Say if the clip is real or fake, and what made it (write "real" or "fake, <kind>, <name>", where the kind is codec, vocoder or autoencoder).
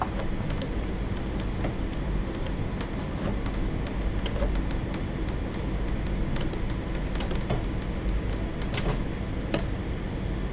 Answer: real